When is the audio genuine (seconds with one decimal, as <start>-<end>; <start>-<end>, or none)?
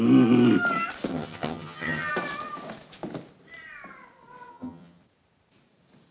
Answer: 0.0-1.1; 2.1-4.5; 5.0-6.1